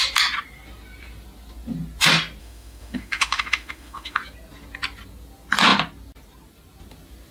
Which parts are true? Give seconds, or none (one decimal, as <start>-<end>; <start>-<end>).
0.0-2.4; 4.2-7.3